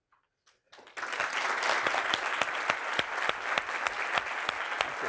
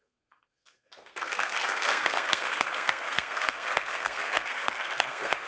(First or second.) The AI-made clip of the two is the second